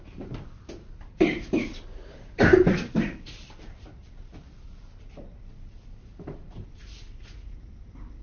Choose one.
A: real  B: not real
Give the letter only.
A